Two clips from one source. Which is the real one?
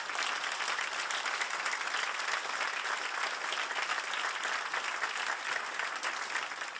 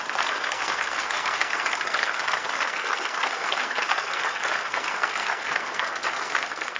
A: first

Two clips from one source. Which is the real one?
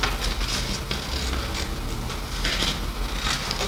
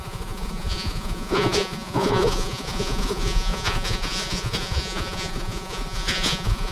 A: first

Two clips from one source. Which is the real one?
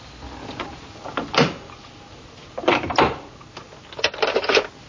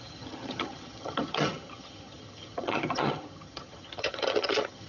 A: first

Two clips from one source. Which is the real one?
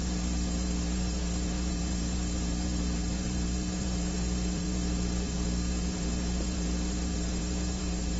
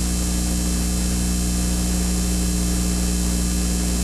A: second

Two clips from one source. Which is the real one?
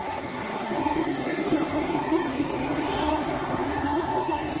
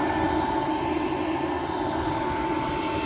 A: second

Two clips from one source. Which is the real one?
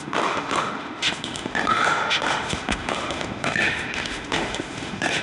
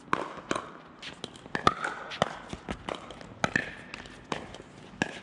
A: second